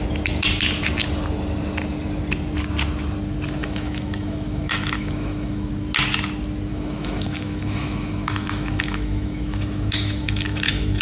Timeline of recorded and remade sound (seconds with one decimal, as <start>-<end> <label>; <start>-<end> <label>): 0.0-3.6 recorded; 3.6-5.7 remade; 5.7-6.7 recorded; 6.7-11.0 remade